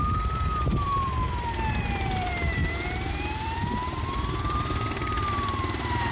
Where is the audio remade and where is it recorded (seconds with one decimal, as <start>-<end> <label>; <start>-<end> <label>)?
0.0-2.6 remade; 2.6-3.1 recorded; 3.1-6.1 remade